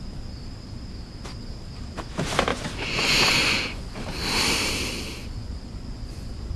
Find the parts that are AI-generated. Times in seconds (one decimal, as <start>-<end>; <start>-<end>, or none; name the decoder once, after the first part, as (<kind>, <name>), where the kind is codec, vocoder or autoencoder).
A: 2.5-3.9 (vocoder, Vocos); 5.2-6.6